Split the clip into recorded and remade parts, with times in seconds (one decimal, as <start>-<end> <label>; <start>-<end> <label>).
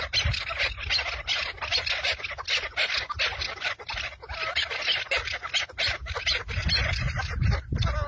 0.0-8.1 recorded